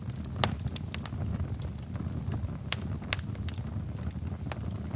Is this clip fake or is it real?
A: real